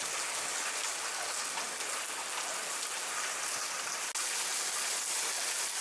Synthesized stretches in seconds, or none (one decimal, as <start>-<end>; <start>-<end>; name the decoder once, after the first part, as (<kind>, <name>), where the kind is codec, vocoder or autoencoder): none